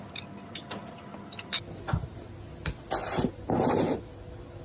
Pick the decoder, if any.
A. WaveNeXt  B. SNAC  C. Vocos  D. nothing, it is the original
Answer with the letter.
D